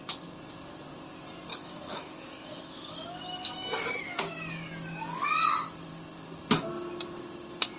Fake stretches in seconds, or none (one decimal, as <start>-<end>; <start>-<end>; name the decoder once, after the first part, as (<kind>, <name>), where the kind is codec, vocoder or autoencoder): 1.5-5.3 (codec, DAC)